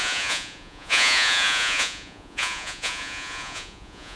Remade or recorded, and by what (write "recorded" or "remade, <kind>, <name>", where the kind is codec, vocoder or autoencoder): remade, vocoder, Vocos